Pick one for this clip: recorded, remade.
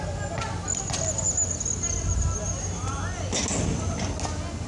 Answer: recorded